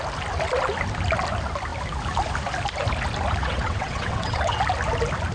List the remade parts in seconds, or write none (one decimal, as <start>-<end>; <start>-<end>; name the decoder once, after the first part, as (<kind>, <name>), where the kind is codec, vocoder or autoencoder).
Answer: 3.4-4.6 (vocoder, WaveNeXt)